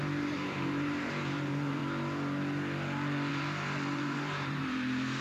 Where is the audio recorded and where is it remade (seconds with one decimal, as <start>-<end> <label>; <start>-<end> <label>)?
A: 0.0-1.8 remade; 1.8-3.3 recorded; 3.3-5.2 remade